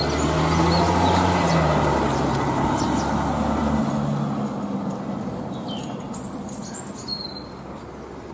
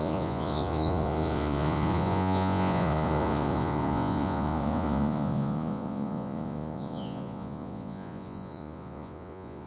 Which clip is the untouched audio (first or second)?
first